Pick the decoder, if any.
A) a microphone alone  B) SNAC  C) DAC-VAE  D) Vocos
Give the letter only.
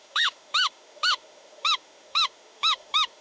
C